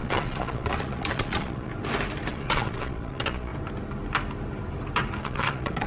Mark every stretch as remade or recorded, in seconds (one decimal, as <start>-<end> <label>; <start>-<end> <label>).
0.0-1.7 remade; 1.7-2.3 recorded; 2.3-3.5 remade; 3.5-5.2 recorded; 5.2-5.9 remade